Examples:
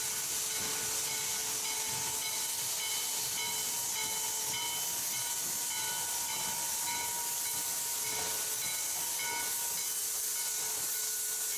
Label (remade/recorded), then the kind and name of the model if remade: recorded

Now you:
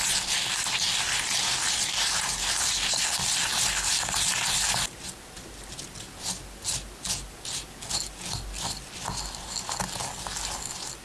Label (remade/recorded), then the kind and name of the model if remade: recorded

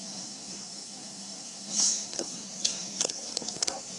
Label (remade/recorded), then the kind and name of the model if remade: remade, codec, SNAC